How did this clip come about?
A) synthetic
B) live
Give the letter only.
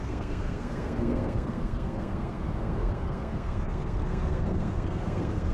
A